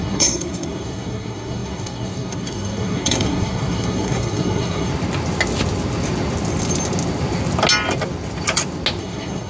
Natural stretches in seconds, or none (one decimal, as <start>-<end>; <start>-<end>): 4.9-9.0